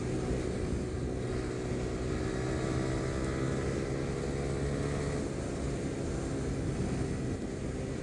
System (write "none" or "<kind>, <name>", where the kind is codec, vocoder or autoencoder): none